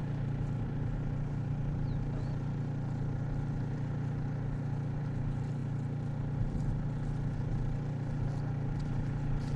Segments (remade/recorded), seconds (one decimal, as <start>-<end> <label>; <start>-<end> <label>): 0.0-9.6 recorded